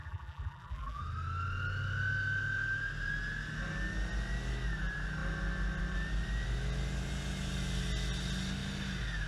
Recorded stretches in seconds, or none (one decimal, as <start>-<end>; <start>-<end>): 1.0-9.3